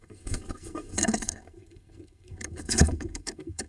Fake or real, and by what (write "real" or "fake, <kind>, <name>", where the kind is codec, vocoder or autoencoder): fake, codec, SNAC